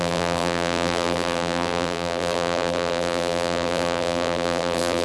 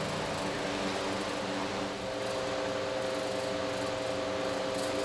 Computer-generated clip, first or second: first